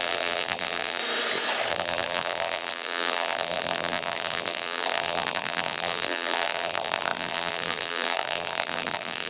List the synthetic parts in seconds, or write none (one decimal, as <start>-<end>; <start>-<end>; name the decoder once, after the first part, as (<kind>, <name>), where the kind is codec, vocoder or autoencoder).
0.0-1.0 (vocoder, BigVGAN v2); 1.7-9.3